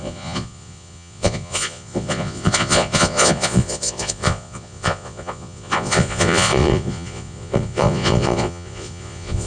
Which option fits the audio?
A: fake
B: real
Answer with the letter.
A